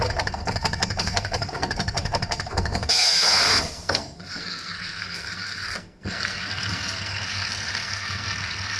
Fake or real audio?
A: fake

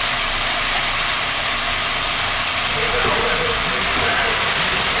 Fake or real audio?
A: real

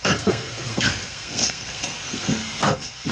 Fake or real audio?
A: fake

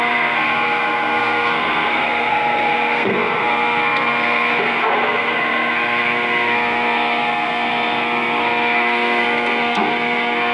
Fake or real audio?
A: fake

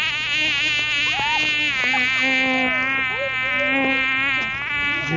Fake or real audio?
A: real